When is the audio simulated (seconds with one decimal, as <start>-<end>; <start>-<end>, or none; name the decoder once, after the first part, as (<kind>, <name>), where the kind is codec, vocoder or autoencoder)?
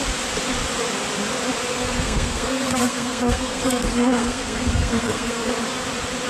1.7-5.5 (codec, SNAC)